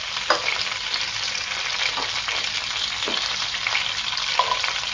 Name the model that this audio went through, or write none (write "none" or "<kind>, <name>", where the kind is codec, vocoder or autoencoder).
none